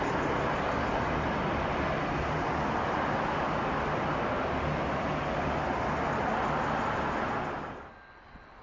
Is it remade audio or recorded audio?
recorded